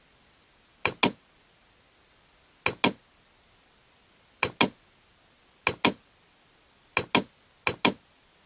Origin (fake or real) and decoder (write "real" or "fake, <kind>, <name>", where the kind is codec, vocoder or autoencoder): real